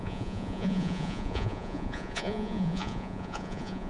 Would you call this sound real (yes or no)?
no